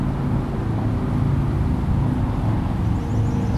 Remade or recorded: recorded